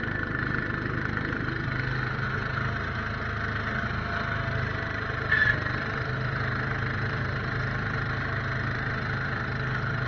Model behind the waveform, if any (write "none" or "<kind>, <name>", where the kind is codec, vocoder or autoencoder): vocoder, BigVGAN v2